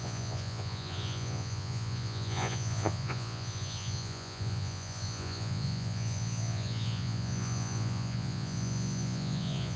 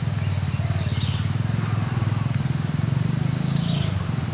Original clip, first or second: second